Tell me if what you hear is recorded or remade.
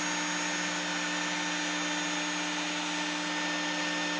recorded